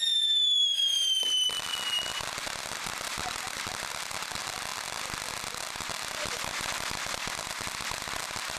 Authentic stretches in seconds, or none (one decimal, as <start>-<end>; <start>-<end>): 0.0-0.6; 1.2-8.6